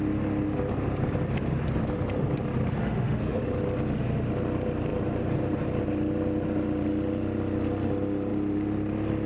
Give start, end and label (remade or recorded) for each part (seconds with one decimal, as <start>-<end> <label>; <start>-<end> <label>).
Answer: 0.0-2.8 recorded; 2.8-3.4 remade; 3.4-9.3 recorded